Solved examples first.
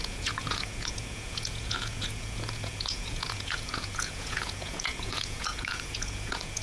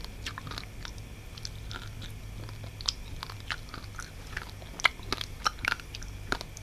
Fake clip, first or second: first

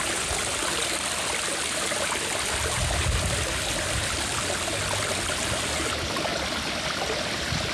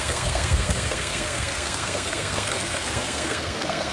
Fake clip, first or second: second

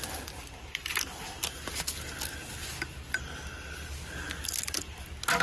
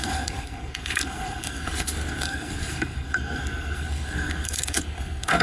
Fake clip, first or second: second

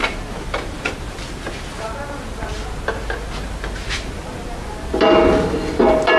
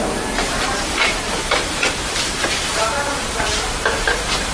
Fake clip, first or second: second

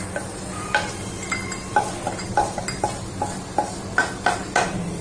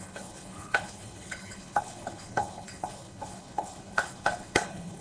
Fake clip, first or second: second